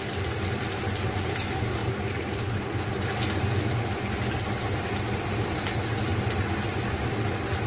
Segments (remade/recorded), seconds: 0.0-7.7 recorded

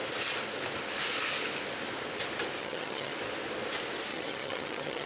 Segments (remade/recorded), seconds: 0.0-2.6 recorded; 2.6-3.1 remade; 3.1-4.1 recorded; 4.1-5.1 remade

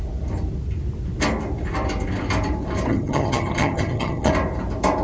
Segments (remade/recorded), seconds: 0.0-2.9 recorded; 2.9-4.3 remade; 4.3-5.0 recorded

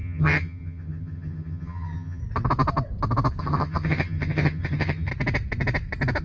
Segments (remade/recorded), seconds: 0.0-2.2 remade; 2.2-3.4 recorded; 3.4-5.1 remade; 5.1-6.2 recorded

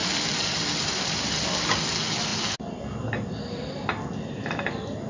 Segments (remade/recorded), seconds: 0.0-5.1 recorded

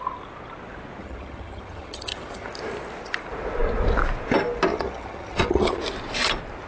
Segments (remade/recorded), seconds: 0.0-1.0 recorded; 1.0-2.5 remade; 2.5-4.7 recorded; 4.7-5.8 remade; 5.8-6.7 recorded

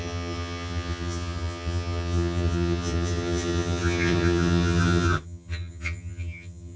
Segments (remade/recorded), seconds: 0.0-6.8 remade